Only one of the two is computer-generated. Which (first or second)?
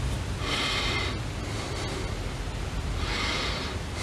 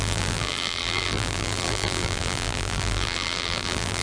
second